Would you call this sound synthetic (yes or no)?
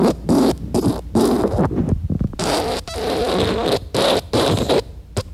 yes